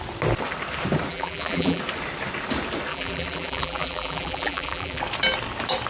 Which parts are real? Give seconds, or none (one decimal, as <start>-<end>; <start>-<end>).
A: 0.0-1.1; 1.8-2.9; 5.0-5.9